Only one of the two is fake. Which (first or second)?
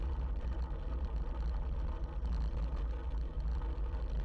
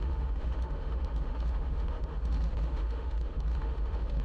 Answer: second